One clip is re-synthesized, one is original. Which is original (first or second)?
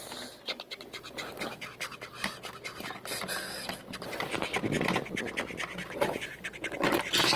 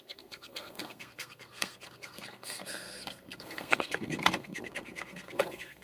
first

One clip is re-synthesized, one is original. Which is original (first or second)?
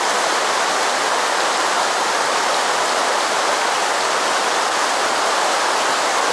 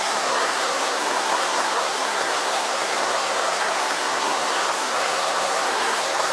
first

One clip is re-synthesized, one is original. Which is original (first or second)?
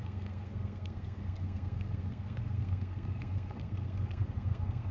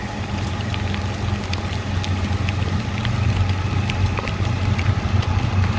second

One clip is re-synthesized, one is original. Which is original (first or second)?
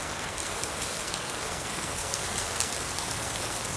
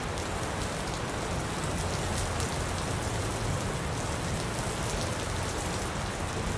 second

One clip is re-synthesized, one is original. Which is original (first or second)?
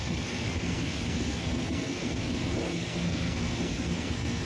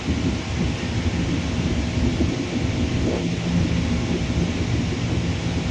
second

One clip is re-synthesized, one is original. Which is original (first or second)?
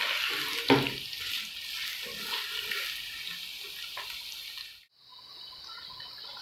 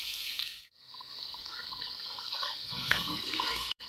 first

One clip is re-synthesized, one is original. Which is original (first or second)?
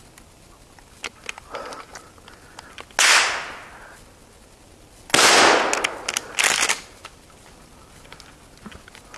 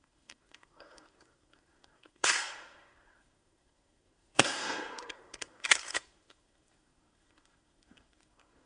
first